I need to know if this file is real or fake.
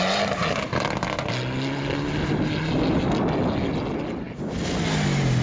real